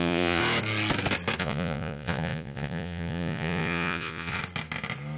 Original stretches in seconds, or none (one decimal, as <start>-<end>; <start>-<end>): 0.4-1.4; 4.4-5.2